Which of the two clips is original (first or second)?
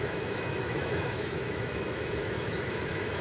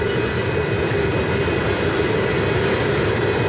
second